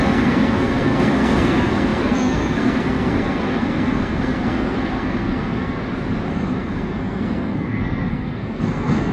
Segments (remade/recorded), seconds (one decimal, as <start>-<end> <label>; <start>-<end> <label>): 0.0-5.8 remade; 5.8-6.3 recorded; 6.3-9.1 remade